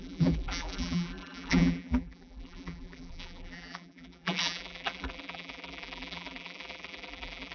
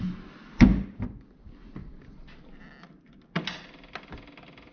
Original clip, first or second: second